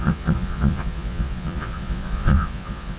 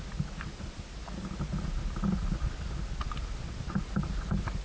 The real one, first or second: second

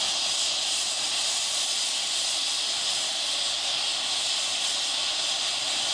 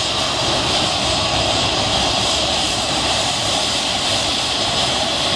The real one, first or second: first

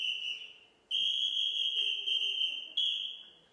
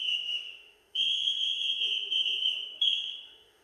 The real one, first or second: first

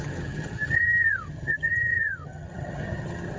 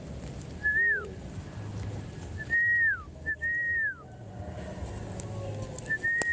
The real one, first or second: second